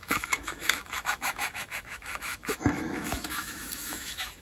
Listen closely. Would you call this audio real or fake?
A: fake